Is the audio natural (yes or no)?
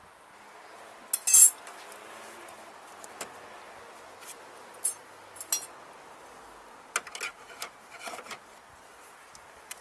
yes